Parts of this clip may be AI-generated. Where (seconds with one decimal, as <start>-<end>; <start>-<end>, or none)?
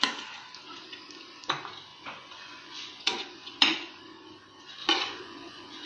1.9-4.0; 4.8-5.9